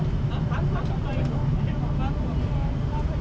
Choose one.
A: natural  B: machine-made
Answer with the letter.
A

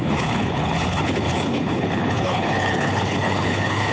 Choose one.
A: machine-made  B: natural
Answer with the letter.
A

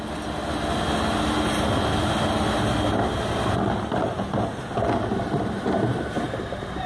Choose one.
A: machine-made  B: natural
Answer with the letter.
B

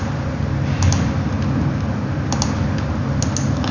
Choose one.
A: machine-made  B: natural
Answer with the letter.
B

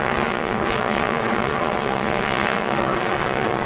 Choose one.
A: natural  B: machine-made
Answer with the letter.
B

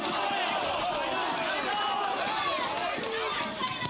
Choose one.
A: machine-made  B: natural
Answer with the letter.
B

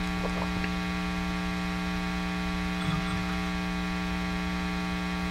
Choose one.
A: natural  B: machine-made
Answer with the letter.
A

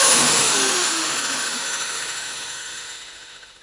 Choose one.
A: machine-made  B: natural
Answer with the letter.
A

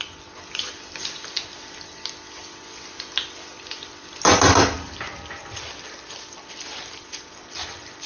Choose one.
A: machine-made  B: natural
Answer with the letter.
B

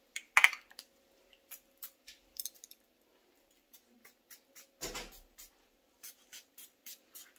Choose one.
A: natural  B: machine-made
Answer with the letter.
A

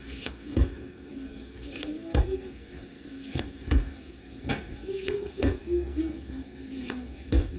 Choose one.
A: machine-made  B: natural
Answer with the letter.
A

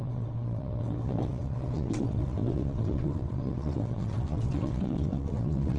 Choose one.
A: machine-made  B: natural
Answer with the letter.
A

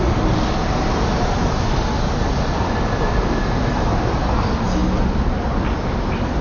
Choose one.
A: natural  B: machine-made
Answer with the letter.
A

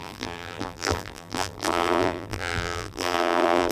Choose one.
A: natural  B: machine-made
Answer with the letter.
B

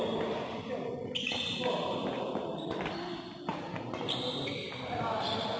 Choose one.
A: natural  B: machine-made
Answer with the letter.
A